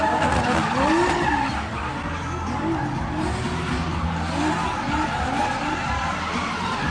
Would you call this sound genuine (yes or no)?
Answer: yes